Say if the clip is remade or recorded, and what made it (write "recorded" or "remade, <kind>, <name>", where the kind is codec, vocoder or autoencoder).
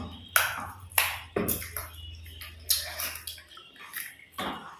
recorded